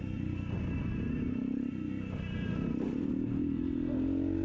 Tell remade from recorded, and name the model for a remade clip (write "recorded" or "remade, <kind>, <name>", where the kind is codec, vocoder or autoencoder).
recorded